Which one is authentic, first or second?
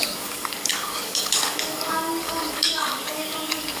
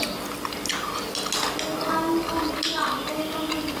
second